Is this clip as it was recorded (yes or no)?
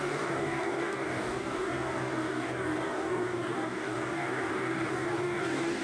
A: no